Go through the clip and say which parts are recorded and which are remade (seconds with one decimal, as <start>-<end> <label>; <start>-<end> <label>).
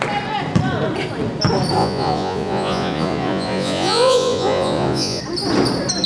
0.0-1.8 recorded; 1.8-5.2 remade; 5.2-6.1 recorded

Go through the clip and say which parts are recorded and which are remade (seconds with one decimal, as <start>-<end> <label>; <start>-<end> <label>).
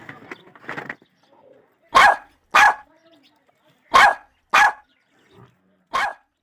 0.0-6.4 recorded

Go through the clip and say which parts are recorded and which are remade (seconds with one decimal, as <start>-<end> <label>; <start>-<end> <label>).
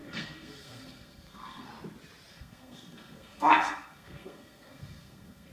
0.0-1.7 remade; 1.7-2.3 recorded; 2.3-5.5 remade